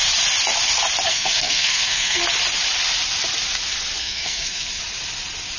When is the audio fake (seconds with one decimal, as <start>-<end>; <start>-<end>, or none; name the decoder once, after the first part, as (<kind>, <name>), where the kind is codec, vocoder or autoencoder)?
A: 1.1-2.2 (codec, SNAC); 4.0-4.8